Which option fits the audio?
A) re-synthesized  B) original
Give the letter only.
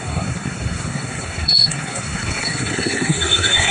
A